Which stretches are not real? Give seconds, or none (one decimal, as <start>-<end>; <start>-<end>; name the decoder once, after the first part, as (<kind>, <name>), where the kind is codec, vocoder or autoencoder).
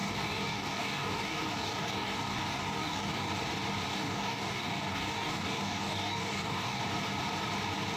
0.0-3.3 (codec, DAC); 3.9-6.8